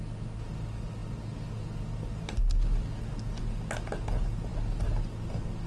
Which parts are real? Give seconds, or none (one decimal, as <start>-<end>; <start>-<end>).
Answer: 0.0-5.7